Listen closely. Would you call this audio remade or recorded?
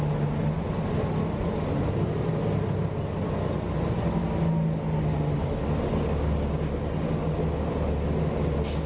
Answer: recorded